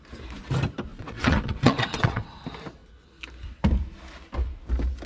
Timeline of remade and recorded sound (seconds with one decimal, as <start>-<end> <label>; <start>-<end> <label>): 0.0-0.9 recorded; 0.9-2.3 remade; 2.3-5.1 recorded